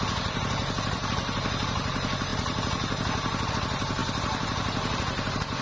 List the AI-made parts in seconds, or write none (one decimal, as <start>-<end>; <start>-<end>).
none